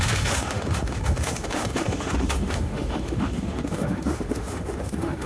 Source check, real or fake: fake